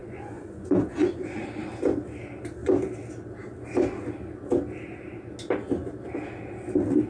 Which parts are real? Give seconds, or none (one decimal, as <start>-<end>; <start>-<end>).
1.4-7.1